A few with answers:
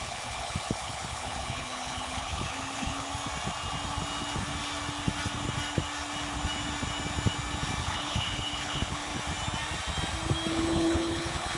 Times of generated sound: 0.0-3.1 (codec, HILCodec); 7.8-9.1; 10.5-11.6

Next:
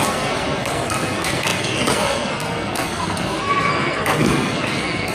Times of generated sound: 0.0-5.1 (codec, SNAC)

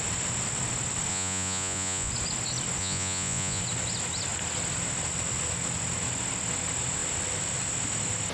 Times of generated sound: 1.1-2.1 (vocoder, Vocos); 2.8-3.6

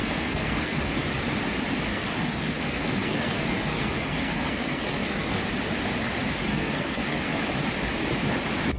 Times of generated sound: 0.0-0.9 (codec, SNAC); 1.9-5.5; 6.5-7.4

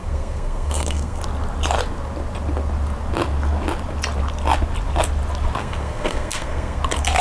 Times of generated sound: 0.0-1.2 (codec, SNAC); 5.6-6.8

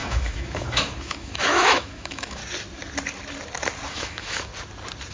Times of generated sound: 0.0-2.4 (autoencoder, DAC-VAE); 3.9-4.5